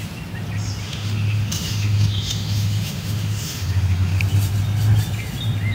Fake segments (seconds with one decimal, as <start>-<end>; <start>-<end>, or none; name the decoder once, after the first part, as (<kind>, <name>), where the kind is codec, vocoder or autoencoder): 0.8-4.2 (autoencoder, DAC-VAE)

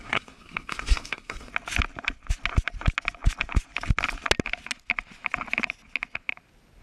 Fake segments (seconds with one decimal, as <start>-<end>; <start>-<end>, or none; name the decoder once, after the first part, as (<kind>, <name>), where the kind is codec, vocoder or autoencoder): 0.0-1.5 (codec, SNAC)

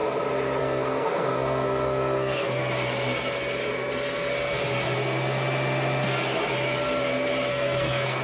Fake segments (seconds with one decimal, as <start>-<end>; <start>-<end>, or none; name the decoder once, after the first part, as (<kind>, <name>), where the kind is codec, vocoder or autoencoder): 0.6-2.6 (codec, SNAC); 7.5-8.2

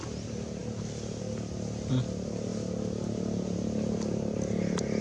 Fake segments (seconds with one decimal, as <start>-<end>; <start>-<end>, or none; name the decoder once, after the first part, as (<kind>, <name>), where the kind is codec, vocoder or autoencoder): none

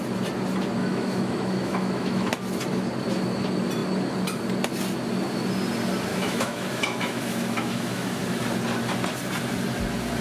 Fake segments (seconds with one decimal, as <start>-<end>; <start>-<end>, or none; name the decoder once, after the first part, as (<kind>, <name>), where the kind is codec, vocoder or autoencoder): 0.8-2.3 (autoencoder, DAC-VAE); 6.1-8.2